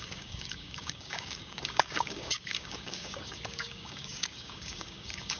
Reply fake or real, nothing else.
fake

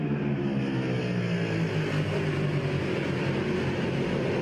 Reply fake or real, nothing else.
real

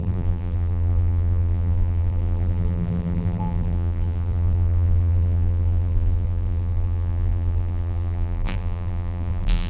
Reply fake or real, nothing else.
fake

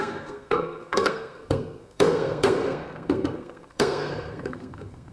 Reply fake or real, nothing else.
fake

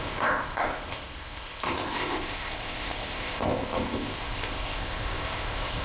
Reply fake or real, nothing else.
fake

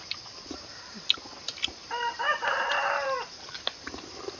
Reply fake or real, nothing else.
real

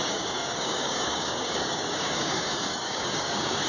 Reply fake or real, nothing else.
fake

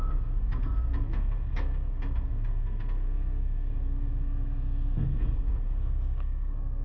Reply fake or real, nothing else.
fake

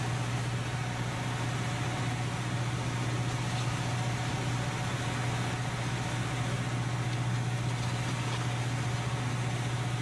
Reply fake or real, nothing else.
real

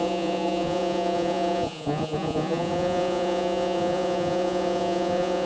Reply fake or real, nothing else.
fake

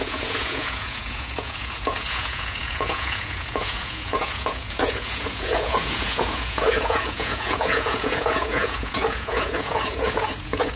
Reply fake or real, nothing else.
fake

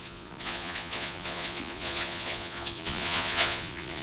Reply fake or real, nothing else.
fake